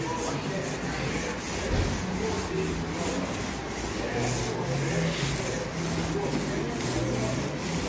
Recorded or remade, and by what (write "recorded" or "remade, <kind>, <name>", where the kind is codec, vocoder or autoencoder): recorded